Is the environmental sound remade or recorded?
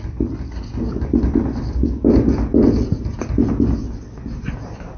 recorded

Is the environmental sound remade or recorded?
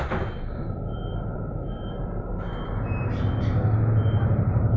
recorded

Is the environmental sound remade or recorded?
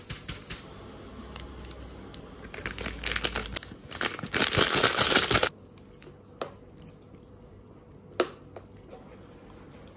recorded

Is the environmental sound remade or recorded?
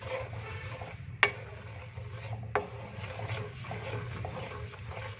recorded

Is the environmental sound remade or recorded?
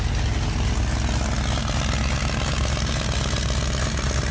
recorded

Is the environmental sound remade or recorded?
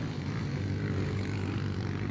recorded